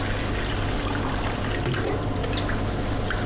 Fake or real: real